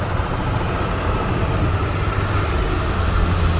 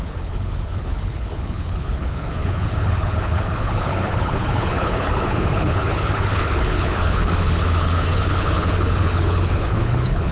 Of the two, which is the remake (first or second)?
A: second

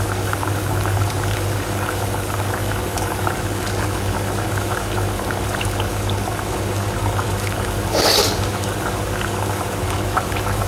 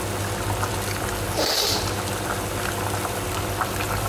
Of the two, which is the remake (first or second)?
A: first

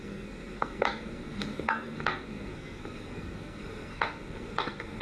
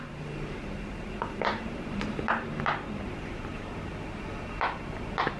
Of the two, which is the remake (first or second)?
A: first